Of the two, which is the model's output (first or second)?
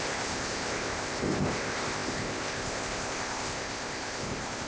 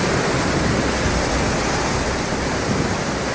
first